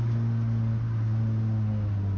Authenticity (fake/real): real